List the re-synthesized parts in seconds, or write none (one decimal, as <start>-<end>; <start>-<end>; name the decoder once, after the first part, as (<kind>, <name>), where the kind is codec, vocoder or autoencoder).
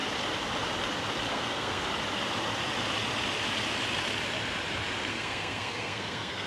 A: 1.3-1.9 (codec, SNAC); 5.1-6.5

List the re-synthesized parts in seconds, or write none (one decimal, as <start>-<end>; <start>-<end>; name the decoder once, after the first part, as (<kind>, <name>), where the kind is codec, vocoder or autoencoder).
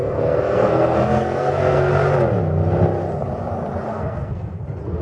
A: 0.0-1.9 (codec, SNAC); 3.9-4.6